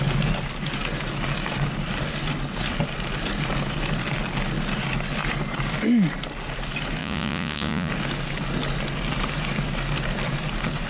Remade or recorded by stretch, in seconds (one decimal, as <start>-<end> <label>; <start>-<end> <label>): 0.0-7.0 recorded; 7.0-7.9 remade; 7.9-10.9 recorded